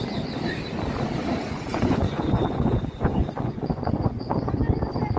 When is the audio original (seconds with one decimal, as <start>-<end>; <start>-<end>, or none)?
0.0-1.7; 4.6-5.2